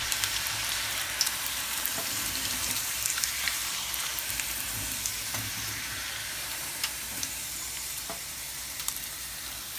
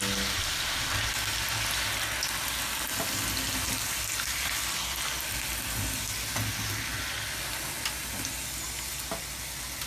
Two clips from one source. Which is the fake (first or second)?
first